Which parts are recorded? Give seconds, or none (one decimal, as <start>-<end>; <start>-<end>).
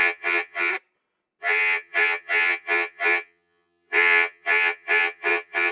0.7-1.4